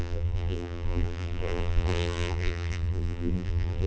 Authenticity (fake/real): fake